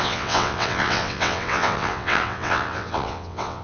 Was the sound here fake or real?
fake